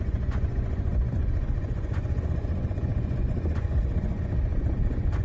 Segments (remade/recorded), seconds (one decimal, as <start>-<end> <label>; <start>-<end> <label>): 0.0-5.2 remade